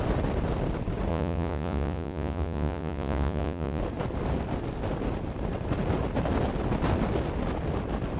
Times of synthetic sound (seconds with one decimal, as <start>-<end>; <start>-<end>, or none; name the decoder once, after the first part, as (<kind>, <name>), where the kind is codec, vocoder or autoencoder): 1.1-3.8 (vocoder, Vocos)